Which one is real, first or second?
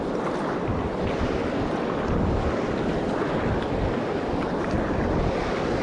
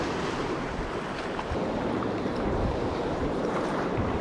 first